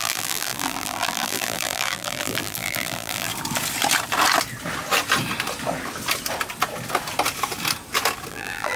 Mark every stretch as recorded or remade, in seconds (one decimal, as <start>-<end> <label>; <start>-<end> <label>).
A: 0.0-3.3 remade; 3.3-8.3 recorded; 8.3-8.8 remade